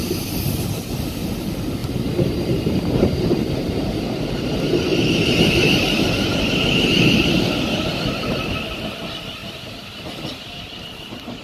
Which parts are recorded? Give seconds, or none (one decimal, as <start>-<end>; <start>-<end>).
0.0-1.8; 4.3-4.9; 6.8-11.4